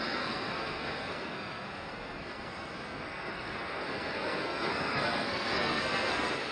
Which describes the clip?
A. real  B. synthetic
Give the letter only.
B